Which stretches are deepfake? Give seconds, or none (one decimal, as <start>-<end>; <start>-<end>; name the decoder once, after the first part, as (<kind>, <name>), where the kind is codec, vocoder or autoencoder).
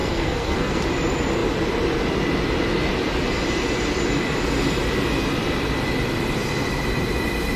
0.0-0.8 (codec, SNAC)